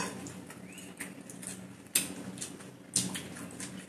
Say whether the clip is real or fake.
real